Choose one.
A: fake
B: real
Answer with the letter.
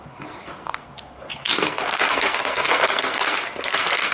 A